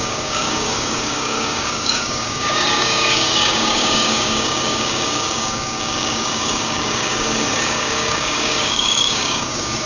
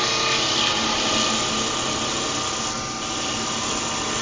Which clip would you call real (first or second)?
second